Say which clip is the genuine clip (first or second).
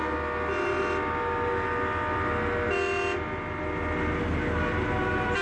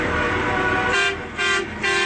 first